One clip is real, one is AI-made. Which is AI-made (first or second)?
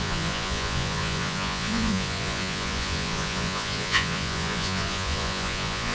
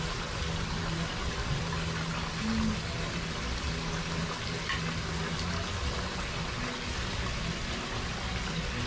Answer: first